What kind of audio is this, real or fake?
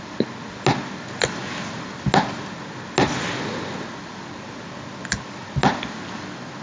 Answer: real